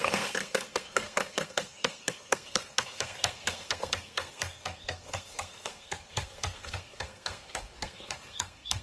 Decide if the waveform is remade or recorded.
remade